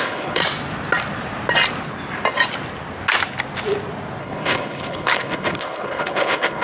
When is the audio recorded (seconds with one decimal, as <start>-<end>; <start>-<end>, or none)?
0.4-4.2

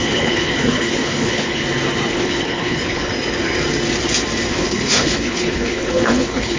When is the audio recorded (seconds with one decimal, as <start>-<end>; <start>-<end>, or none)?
1.6-2.1; 3.1-4.5

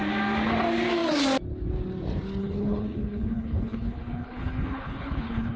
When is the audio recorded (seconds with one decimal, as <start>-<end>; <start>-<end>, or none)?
0.0-2.4

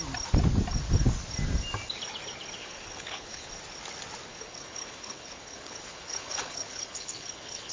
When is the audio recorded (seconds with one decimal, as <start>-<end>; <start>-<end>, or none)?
0.0-2.6; 3.5-4.3